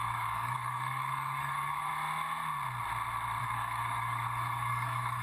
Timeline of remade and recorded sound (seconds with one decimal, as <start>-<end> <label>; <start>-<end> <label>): 0.0-1.9 remade; 1.9-3.4 recorded; 3.4-5.2 remade

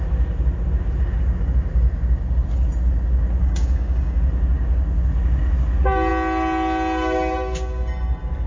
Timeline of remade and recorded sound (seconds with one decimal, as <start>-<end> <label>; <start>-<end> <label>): 0.0-3.4 recorded; 3.4-4.2 remade; 4.2-8.5 recorded

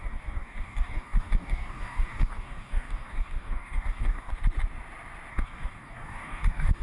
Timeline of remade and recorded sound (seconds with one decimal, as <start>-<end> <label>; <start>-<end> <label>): 0.0-4.3 remade; 4.3-5.3 recorded; 5.3-6.8 remade

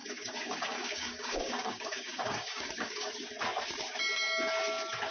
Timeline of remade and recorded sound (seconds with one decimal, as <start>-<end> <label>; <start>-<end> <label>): 0.0-3.1 remade; 3.1-5.1 recorded